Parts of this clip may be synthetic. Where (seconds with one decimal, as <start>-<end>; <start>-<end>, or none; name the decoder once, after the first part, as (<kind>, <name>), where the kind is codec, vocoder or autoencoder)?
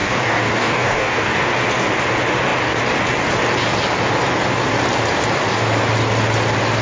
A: 0.0-1.5 (codec, DAC)